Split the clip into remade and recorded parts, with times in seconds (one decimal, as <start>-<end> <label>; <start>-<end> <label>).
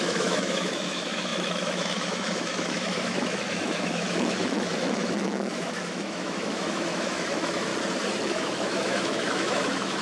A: 0.0-7.7 remade; 7.7-8.3 recorded; 8.3-10.0 remade